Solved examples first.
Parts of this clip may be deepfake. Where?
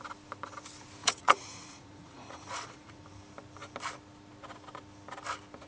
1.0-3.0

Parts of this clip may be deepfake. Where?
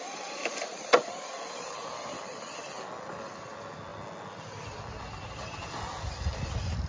none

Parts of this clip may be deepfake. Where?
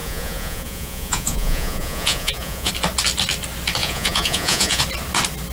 0.0-2.7; 3.8-4.8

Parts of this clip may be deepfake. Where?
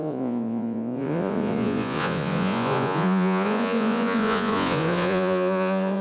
0.0-6.0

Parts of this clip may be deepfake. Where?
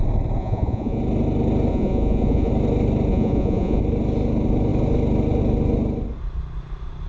0.4-1.0; 1.7-2.5; 3.1-3.8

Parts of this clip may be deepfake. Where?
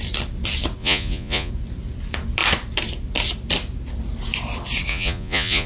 0.8-1.5; 4.9-5.7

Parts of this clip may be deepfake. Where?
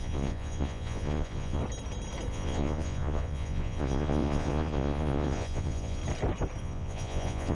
0.0-1.6; 2.3-6.0; 6.6-7.5